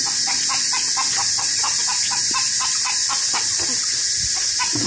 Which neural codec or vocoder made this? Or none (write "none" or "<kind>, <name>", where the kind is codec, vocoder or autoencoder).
none